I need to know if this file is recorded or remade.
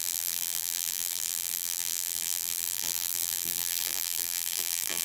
remade